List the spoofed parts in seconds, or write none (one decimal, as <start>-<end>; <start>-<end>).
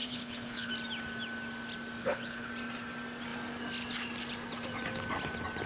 0.0-0.7; 2.0-2.5